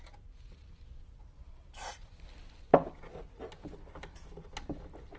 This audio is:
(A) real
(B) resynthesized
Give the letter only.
A